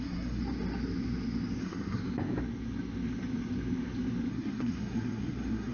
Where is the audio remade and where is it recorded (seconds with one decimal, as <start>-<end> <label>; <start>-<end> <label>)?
0.0-0.4 remade; 0.4-1.6 recorded; 1.6-2.0 remade; 2.0-4.3 recorded; 4.3-5.7 remade